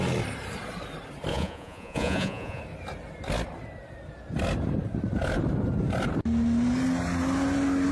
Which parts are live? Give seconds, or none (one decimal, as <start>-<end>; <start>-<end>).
0.0-1.3; 2.6-7.9